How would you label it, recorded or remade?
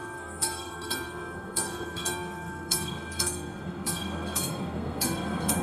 remade